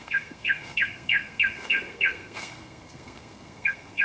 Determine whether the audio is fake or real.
fake